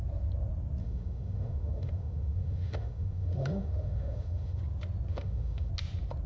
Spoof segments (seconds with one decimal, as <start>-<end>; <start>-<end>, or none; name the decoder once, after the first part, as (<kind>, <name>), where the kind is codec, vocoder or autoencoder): 0.8-4.6 (autoencoder, DAC-VAE); 5.1-5.7